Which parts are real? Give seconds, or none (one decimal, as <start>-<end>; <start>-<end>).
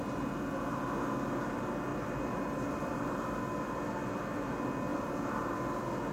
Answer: 0.0-1.9; 3.2-4.9; 5.4-6.1